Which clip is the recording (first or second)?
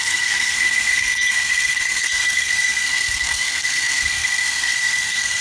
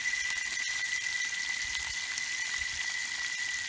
second